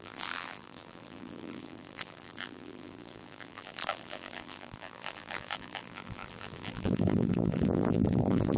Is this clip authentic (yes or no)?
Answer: no